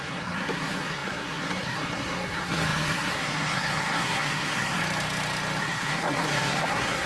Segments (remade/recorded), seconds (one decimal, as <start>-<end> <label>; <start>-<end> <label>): 0.0-4.8 remade; 4.8-5.6 recorded; 5.6-7.1 remade

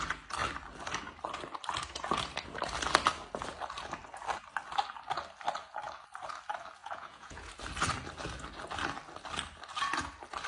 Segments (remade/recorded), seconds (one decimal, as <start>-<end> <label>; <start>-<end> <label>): 0.0-6.8 recorded; 6.8-7.5 remade; 7.5-10.5 recorded

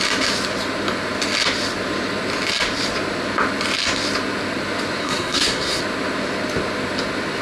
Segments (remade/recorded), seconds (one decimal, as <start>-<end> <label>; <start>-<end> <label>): 0.0-5.0 recorded; 5.0-5.8 remade; 5.8-7.4 recorded

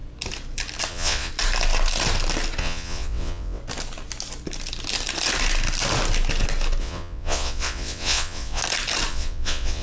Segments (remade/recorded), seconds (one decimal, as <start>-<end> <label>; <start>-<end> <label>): 0.0-0.9 recorded; 0.9-1.3 remade; 1.3-2.6 recorded; 2.6-3.6 remade; 3.6-6.8 recorded; 6.8-8.6 remade; 8.6-9.1 recorded; 9.1-9.8 remade

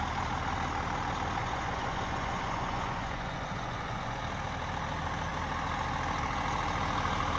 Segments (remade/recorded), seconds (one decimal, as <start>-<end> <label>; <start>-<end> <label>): 0.0-1.4 recorded; 1.4-4.2 remade; 4.2-7.4 recorded

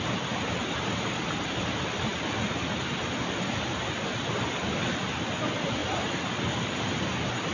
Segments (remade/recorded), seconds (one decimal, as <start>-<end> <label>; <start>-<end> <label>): 0.0-7.5 recorded

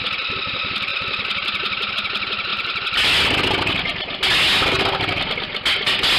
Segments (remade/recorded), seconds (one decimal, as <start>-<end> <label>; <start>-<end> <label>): 0.0-6.2 recorded